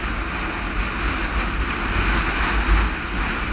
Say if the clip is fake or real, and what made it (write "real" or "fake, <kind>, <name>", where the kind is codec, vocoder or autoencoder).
real